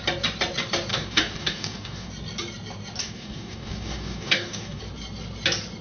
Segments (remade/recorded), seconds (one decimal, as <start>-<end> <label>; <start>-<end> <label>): 0.0-0.9 recorded; 0.9-2.1 remade; 2.1-3.0 recorded; 3.0-4.8 remade; 4.8-5.8 recorded